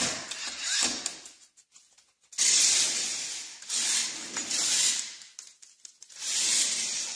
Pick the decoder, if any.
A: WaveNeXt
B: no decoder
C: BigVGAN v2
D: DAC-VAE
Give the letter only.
B